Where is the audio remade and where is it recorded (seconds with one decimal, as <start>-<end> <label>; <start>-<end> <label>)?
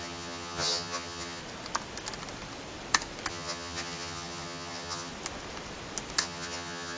0.0-1.4 remade; 1.4-3.3 recorded; 3.3-5.1 remade; 5.1-6.2 recorded; 6.2-7.0 remade